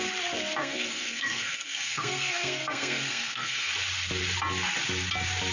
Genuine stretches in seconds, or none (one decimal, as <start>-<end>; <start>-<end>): 0.0-0.6; 3.7-5.5